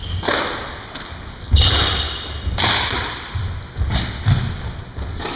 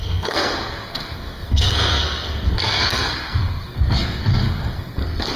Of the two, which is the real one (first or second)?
first